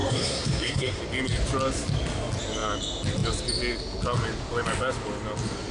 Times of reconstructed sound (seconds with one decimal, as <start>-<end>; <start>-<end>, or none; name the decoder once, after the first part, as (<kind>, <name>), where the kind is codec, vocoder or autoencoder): 0.0-1.0 (codec, SNAC)